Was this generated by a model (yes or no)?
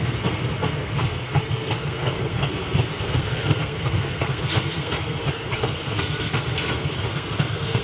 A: yes